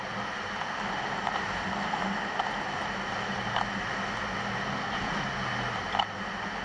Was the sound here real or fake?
real